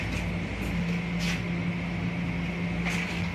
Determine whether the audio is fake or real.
real